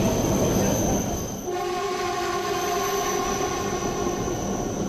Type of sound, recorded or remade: recorded